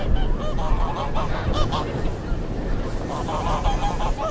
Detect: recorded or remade recorded